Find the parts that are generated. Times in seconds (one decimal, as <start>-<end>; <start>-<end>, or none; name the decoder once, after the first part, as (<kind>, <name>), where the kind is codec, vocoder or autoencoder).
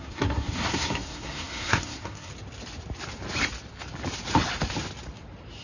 0.0-2.3 (codec, SNAC)